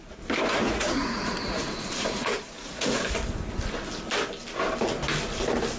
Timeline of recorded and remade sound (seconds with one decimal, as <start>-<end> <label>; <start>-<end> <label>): 0.0-0.6 recorded; 0.6-3.0 remade; 3.0-5.8 recorded